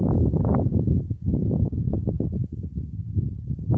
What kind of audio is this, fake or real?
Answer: real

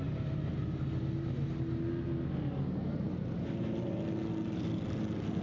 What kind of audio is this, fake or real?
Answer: real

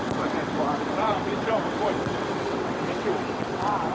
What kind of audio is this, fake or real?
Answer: fake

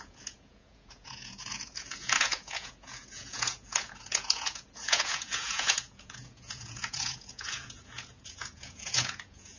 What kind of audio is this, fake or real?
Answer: fake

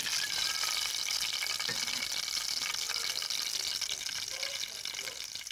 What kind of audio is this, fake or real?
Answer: real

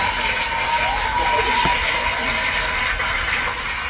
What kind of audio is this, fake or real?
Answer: real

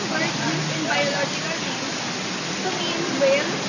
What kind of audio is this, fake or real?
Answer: real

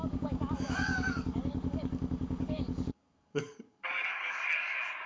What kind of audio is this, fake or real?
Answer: fake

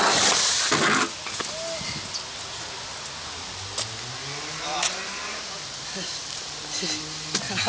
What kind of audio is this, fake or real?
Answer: real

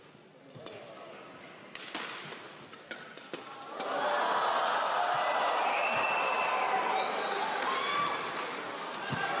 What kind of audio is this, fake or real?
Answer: real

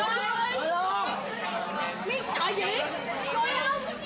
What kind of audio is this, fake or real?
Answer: real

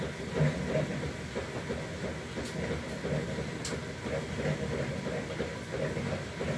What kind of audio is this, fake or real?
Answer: real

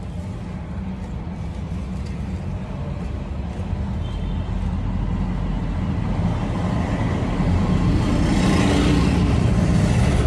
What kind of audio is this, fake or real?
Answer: real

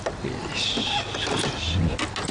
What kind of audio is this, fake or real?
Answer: real